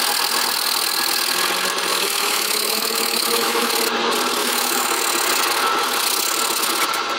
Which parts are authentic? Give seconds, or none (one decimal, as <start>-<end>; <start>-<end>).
0.0-1.9; 3.7-4.4; 5.0-7.2